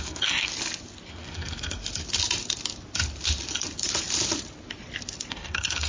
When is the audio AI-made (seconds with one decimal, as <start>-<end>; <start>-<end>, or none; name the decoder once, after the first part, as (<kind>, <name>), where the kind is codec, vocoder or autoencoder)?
0.0-0.5 (codec, SNAC); 1.1-1.8; 5.3-5.9